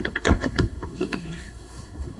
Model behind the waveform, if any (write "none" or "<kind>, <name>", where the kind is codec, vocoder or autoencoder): codec, SNAC